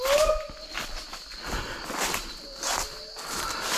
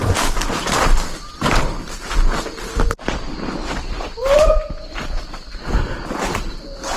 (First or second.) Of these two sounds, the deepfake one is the second